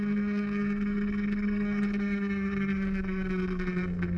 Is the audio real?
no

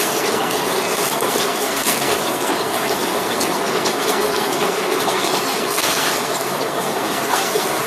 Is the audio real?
no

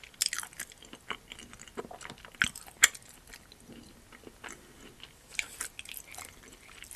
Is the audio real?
yes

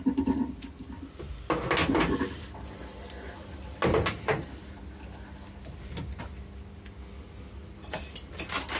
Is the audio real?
yes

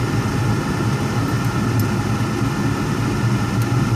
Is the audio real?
yes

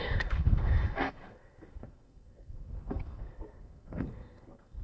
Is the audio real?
no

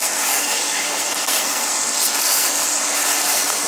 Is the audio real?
no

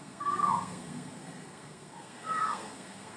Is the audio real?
no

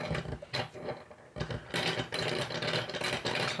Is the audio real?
yes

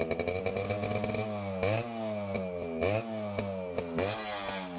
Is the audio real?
yes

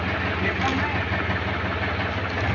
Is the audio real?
yes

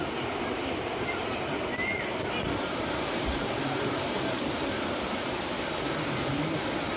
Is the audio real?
yes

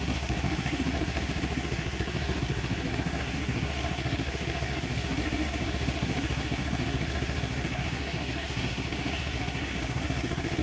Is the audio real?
no